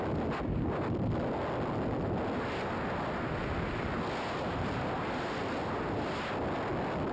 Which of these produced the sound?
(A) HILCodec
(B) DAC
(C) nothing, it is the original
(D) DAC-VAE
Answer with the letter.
C